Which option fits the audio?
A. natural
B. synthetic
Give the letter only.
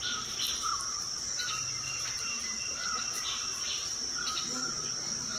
B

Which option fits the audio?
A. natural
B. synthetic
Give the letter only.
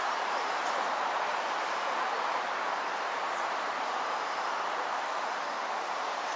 B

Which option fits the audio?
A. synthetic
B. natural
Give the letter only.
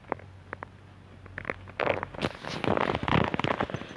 B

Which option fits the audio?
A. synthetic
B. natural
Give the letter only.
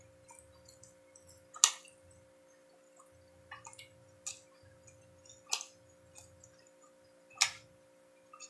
B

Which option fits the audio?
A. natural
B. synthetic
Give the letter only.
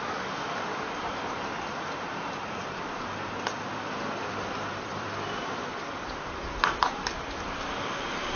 B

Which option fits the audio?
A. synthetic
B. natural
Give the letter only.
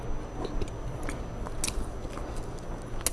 B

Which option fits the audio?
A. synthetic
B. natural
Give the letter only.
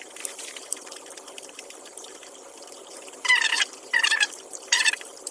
A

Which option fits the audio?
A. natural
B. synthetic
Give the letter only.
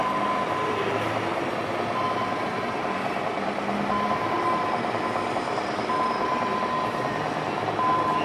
A